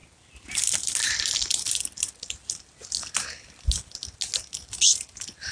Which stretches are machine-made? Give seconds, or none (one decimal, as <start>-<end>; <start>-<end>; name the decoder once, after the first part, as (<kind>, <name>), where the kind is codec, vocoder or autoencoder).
none